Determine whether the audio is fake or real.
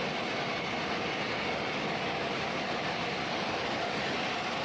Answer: real